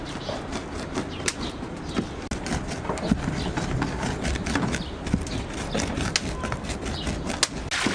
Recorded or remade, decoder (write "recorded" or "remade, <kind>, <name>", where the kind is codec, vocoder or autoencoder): recorded